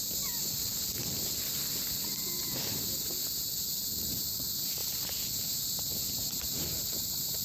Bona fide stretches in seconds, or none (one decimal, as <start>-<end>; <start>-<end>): 0.7-4.0; 4.8-5.4